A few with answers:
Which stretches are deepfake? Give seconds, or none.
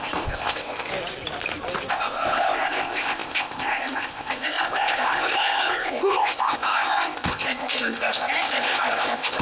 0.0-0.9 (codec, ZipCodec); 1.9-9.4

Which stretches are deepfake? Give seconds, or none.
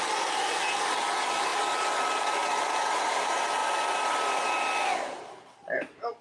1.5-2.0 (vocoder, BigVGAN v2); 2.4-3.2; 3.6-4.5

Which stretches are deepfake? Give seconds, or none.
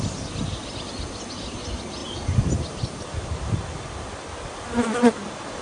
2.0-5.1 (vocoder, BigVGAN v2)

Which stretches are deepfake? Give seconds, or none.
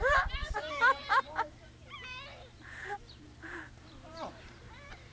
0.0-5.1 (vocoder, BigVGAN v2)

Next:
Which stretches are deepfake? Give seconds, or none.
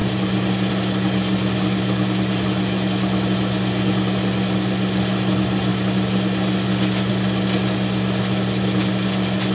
none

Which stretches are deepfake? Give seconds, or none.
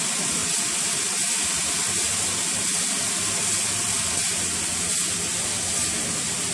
none